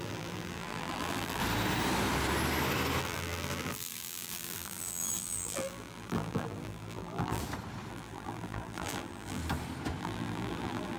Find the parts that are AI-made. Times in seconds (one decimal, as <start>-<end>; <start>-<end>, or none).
0.0-1.4; 3.0-7.4; 7.9-9.4; 10.0-11.0